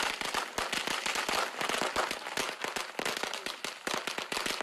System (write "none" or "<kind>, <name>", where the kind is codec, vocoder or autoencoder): none